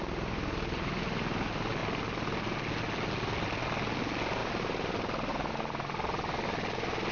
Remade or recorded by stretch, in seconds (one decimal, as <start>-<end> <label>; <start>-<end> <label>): 0.0-4.4 recorded; 4.4-5.3 remade; 5.3-7.1 recorded